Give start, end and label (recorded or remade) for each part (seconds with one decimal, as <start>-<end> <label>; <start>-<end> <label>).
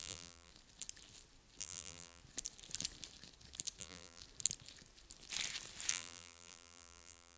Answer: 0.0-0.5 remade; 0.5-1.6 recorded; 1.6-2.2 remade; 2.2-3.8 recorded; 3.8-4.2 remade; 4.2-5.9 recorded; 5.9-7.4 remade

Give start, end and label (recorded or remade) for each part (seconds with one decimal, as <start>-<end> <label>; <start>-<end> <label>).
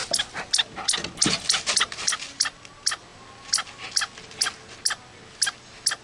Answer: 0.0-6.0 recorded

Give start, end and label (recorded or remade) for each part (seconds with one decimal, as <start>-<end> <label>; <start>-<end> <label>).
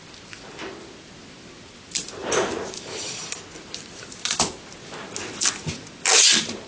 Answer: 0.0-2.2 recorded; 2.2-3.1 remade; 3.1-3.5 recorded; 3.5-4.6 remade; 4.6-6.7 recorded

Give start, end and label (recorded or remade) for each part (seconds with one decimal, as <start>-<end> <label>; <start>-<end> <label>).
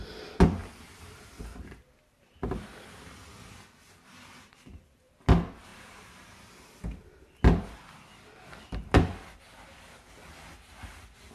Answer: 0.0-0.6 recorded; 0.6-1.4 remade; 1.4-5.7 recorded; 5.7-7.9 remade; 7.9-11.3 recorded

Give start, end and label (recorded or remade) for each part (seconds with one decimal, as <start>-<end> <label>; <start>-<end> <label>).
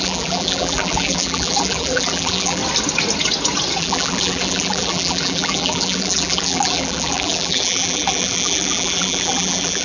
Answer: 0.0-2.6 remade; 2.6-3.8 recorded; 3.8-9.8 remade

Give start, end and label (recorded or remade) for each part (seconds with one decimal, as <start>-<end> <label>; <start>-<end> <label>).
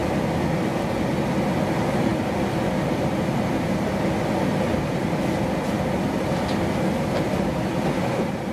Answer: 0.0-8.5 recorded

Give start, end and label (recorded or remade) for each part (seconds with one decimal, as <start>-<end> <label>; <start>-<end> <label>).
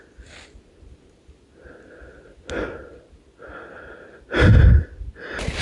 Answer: 0.0-5.6 recorded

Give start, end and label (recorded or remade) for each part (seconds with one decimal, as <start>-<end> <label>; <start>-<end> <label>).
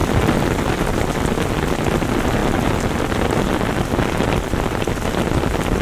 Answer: 0.0-5.8 recorded